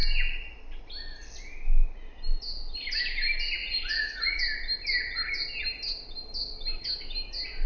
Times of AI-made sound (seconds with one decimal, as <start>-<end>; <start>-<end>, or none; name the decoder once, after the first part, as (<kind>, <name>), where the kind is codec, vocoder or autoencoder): 3.6-4.4 (vocoder, Vocos)